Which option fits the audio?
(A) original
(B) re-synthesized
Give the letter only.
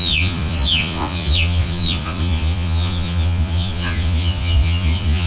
B